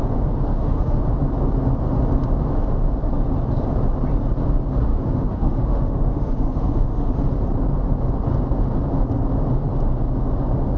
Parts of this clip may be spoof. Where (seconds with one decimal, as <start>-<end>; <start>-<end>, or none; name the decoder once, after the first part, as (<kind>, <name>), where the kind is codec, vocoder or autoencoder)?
0.5-1.0 (autoencoder, DAC-VAE); 4.9-7.1